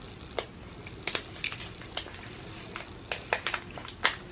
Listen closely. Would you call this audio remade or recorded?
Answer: recorded